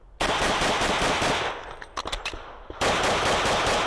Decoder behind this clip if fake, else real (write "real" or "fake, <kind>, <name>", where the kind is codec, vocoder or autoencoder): real